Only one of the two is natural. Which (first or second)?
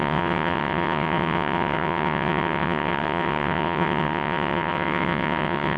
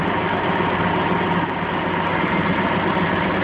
second